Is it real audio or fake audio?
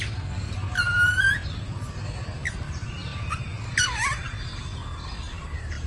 real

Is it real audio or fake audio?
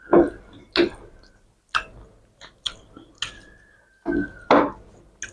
real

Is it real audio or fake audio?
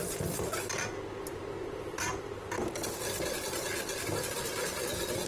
real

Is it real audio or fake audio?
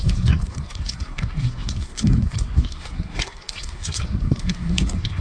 fake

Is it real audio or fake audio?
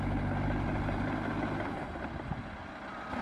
real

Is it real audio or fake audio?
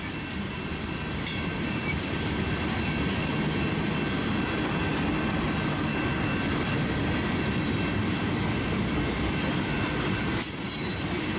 real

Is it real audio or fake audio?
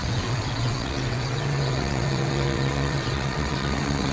fake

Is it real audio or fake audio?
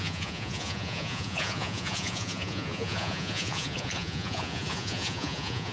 fake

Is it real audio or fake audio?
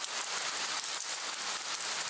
real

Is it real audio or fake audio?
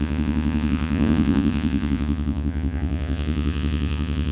fake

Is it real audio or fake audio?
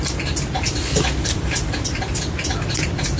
real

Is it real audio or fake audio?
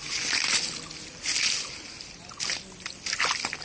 real